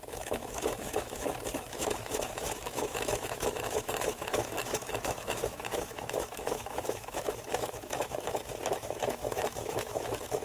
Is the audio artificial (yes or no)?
yes